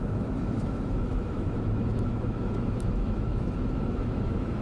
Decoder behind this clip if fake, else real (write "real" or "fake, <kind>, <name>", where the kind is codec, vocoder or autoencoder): fake, autoencoder, DAC-VAE